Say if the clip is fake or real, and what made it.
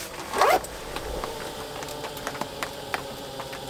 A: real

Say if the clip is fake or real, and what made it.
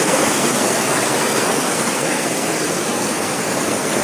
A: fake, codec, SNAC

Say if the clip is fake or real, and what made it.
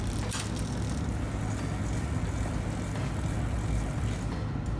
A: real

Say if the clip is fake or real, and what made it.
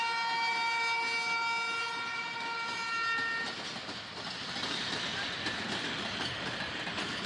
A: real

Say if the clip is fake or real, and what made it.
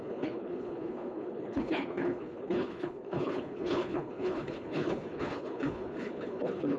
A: fake, codec, HILCodec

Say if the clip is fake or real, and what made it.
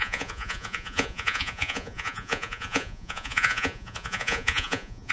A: fake, vocoder, Vocos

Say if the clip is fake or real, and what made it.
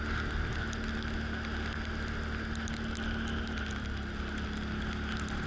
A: real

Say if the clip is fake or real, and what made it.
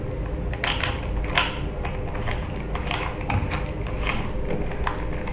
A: real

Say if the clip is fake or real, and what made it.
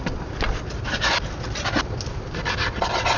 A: real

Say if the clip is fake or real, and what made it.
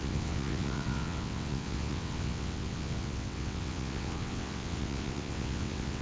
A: fake, vocoder, WaveNeXt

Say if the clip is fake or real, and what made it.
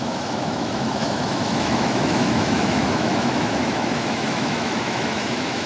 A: fake, autoencoder, DAC-VAE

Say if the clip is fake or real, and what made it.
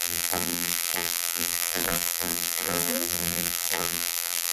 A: fake, vocoder, BigVGAN v2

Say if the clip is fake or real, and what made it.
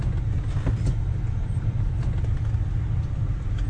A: real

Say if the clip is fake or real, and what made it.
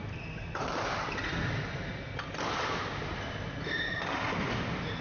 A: real